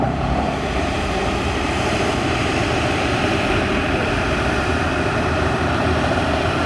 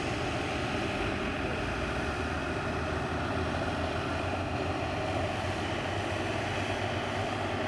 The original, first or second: second